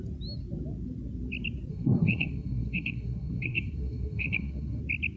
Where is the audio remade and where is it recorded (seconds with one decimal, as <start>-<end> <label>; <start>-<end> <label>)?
0.0-1.7 recorded; 1.7-4.8 remade; 4.8-5.2 recorded